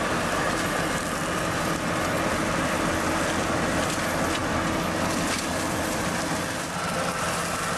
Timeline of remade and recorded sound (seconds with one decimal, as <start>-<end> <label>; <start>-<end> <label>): 0.0-7.8 recorded